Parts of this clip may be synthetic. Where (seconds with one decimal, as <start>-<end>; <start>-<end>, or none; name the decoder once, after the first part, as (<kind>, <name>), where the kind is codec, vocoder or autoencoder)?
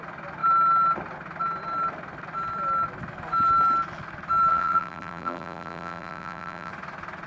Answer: 4.5-6.7 (vocoder, BigVGAN v2)